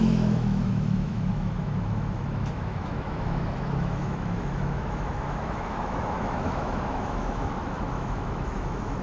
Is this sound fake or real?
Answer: fake